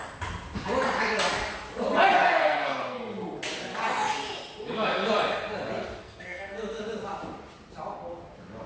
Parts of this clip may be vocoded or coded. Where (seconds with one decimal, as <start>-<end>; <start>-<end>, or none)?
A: 2.4-3.0; 6.0-6.8

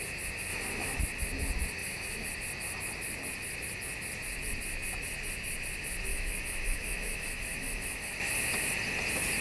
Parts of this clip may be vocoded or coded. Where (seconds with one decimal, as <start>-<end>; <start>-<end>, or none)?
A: 0.5-1.0; 1.8-2.3; 6.1-8.3